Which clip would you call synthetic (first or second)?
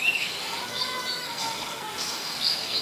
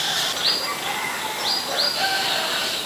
first